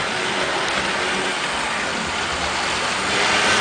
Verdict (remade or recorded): recorded